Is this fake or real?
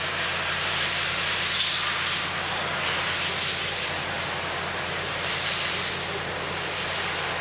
real